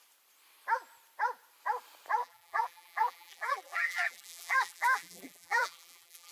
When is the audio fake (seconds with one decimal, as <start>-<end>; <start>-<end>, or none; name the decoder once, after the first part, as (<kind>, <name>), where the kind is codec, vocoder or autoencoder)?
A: 2.2-6.3 (vocoder, BigVGAN v2)